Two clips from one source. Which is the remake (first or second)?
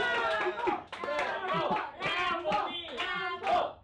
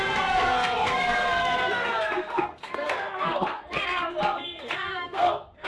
second